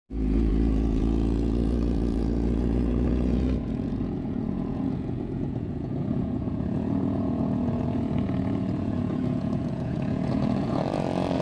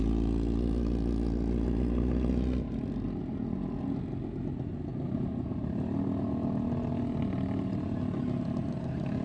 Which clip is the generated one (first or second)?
first